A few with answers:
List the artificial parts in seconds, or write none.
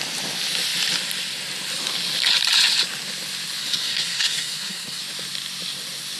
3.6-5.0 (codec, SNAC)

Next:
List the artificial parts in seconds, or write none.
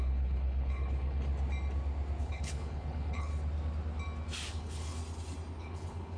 0.0-1.3 (codec, HILCodec); 2.2-3.3; 4.5-5.0; 5.6-6.2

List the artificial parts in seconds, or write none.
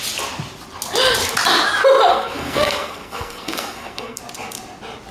2.1-4.2 (codec, SNAC)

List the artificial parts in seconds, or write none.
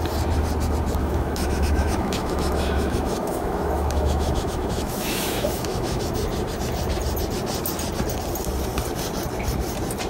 1.0-6.0 (autoencoder, DAC-VAE)